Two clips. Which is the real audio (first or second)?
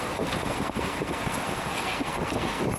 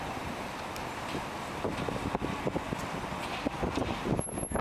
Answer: second